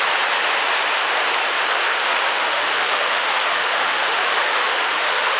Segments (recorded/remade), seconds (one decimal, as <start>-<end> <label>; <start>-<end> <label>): 0.0-1.9 recorded; 1.9-5.4 remade